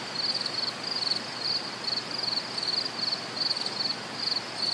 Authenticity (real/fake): real